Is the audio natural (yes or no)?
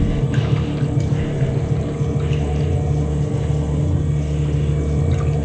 yes